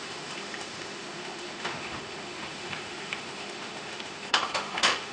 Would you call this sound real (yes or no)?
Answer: no